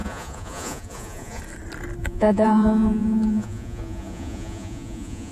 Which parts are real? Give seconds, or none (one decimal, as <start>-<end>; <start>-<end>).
1.4-2.0